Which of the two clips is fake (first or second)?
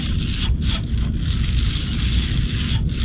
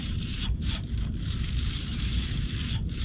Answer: second